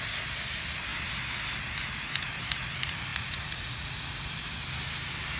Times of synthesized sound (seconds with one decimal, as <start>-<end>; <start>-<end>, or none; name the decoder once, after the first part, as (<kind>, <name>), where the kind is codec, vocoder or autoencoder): 3.1-4.0 (vocoder, Vocos)